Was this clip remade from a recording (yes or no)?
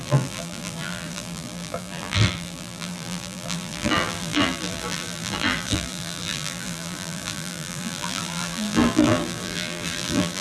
yes